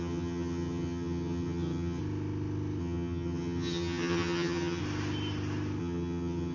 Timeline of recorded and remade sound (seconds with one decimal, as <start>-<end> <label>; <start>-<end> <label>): 0.0-2.0 remade; 2.0-2.8 recorded; 2.8-4.8 remade; 4.8-5.8 recorded; 5.8-6.5 remade